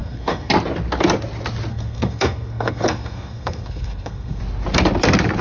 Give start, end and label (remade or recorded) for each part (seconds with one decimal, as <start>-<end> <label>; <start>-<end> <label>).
0.0-0.5 remade; 0.5-1.7 recorded; 1.7-4.4 remade; 4.4-5.4 recorded